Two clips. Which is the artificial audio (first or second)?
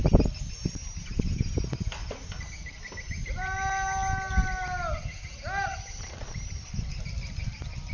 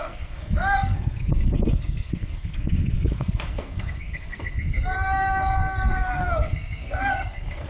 second